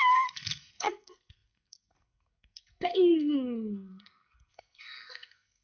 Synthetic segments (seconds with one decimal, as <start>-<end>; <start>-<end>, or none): 0.0-5.6

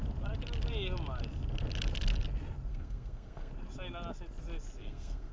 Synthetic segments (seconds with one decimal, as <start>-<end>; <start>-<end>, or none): 2.7-3.5; 4.8-5.3

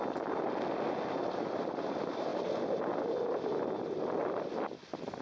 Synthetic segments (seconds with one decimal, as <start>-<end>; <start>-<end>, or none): none

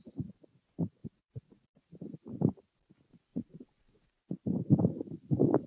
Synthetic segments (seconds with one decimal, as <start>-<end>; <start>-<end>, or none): 1.0-1.7; 3.3-4.2

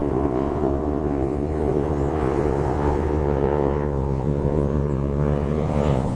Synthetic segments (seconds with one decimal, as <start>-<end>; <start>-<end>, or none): 0.0-6.1

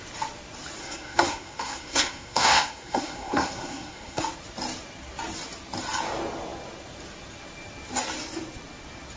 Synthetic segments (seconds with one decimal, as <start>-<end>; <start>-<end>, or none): 0.8-4.2

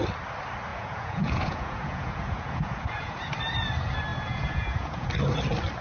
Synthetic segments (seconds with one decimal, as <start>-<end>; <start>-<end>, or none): 0.7-3.3; 4.1-5.1